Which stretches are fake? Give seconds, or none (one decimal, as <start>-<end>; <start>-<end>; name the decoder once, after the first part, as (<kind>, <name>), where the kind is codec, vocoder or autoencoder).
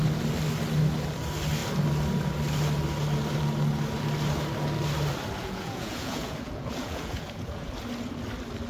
5.4-7.7 (vocoder, Vocos)